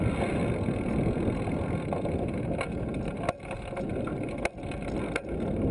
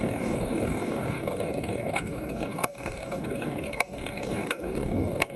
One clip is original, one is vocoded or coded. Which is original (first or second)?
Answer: first